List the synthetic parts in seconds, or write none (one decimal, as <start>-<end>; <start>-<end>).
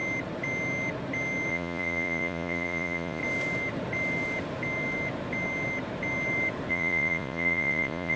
1.5-3.2; 6.7-8.2